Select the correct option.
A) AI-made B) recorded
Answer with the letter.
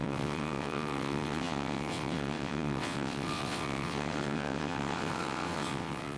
A